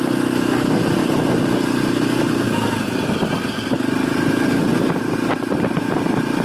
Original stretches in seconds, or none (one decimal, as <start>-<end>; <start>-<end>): 0.0-6.4